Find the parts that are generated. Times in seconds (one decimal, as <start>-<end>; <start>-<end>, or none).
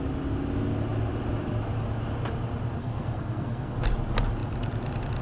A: 2.8-3.7